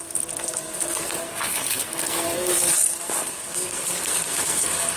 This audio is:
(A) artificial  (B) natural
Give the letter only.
A